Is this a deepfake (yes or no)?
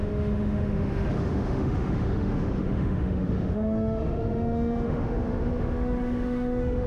yes